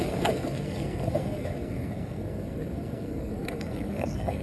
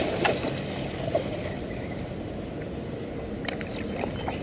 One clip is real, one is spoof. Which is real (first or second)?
second